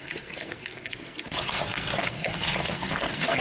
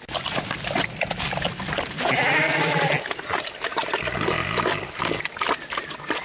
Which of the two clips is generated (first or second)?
first